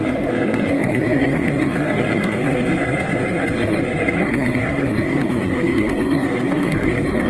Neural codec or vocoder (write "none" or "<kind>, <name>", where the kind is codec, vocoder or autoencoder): codec, SNAC